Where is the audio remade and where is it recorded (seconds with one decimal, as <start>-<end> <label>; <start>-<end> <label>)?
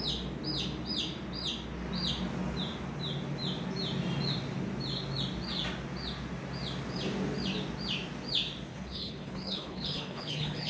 0.0-8.7 recorded; 8.7-10.7 remade